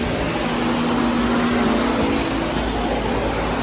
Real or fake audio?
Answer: real